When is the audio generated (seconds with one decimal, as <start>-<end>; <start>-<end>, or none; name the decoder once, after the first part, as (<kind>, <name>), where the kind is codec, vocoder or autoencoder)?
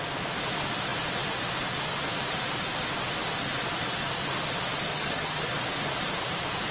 4.9-5.5 (vocoder, HiFi-GAN)